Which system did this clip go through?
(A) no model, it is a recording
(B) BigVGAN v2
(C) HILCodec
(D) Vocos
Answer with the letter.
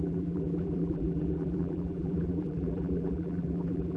B